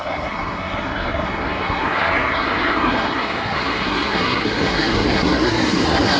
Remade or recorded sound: remade